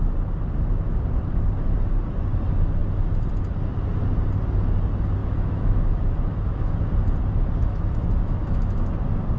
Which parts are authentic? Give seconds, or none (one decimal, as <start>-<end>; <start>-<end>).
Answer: 0.0-5.2; 6.7-7.6; 8.9-9.4